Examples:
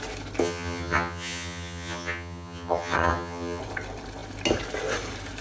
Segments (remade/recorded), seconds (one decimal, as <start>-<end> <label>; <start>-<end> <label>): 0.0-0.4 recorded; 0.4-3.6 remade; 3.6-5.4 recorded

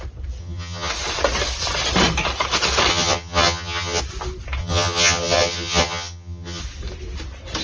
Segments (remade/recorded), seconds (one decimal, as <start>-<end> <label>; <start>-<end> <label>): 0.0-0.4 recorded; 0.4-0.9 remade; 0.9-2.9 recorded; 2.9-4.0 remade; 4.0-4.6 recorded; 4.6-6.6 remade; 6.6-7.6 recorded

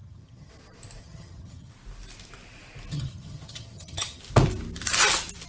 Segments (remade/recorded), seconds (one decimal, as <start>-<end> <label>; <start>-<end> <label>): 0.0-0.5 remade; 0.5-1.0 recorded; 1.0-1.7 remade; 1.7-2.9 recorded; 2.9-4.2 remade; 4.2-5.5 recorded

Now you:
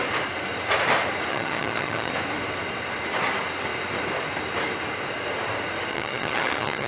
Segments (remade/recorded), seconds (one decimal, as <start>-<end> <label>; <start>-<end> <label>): 0.0-1.3 recorded; 1.3-2.1 remade; 2.1-5.9 recorded; 5.9-6.9 remade

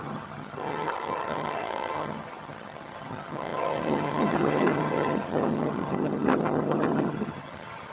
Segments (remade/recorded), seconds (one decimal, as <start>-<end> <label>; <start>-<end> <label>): 0.0-7.9 remade